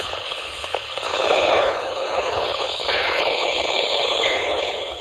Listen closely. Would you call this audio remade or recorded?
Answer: remade